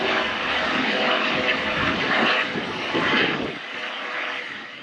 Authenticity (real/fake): fake